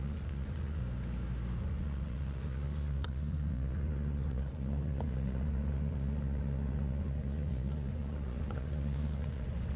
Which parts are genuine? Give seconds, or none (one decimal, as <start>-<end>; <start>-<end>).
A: 0.8-1.6